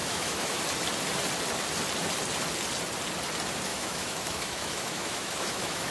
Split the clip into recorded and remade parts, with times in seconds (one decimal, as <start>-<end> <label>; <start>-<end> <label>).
0.0-0.6 remade; 0.6-3.7 recorded; 3.7-5.9 remade